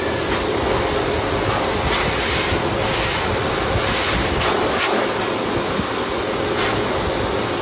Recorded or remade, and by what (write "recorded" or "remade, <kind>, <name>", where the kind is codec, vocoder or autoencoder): recorded